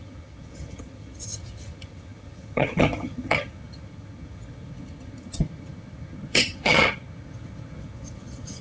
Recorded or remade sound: remade